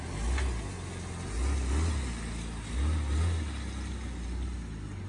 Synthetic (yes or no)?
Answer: no